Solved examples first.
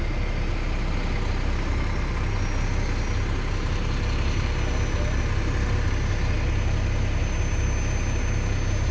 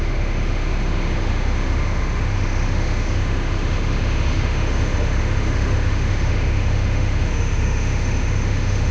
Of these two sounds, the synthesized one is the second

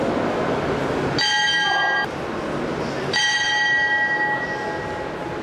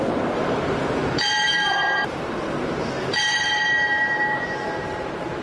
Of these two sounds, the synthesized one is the second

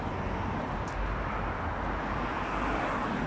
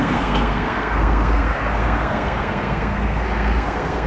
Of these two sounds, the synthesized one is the second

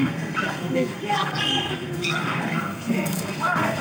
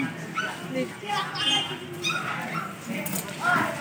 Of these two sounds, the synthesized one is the first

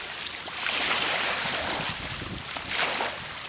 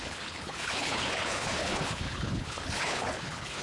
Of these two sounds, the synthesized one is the second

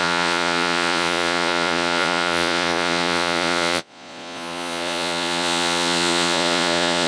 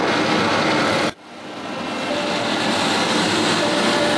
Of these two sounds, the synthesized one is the first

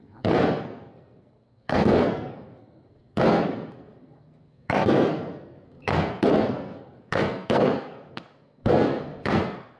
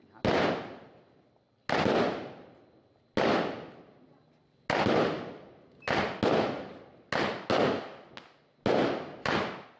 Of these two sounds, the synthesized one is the first